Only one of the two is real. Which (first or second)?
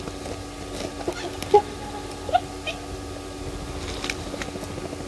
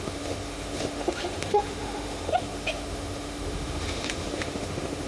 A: first